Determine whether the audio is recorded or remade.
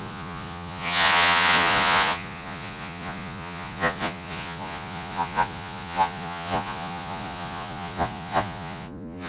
remade